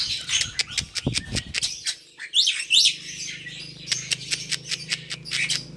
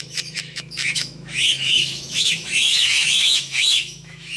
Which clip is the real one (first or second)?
first